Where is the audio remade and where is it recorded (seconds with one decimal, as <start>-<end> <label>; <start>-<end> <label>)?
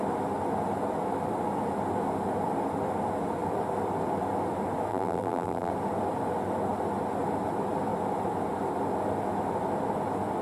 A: 0.0-4.9 recorded; 4.9-5.7 remade; 5.7-10.4 recorded